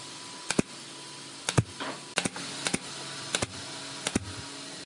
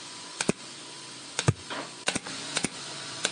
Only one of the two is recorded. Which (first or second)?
first